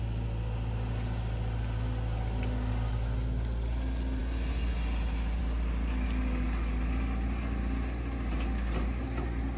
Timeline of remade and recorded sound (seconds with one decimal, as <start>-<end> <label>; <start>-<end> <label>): 0.0-9.6 recorded